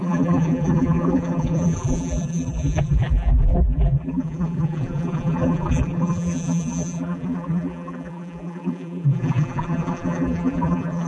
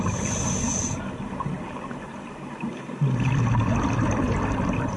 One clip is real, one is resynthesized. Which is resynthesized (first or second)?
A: first